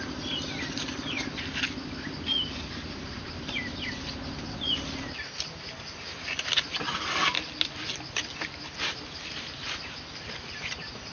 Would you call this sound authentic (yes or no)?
yes